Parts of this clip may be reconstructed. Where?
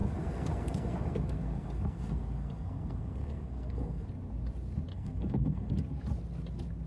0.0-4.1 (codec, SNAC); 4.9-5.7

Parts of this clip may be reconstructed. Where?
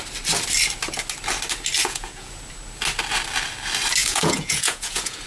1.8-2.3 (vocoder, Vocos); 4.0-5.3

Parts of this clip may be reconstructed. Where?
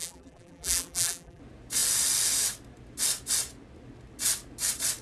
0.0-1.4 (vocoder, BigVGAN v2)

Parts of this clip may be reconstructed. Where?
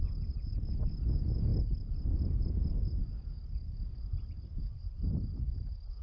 none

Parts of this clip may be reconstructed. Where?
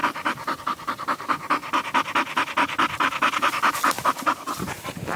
0.0-1.6 (vocoder, BigVGAN v2); 4.0-5.2